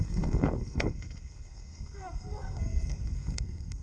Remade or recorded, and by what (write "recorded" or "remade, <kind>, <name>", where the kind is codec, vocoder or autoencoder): remade, codec, SNAC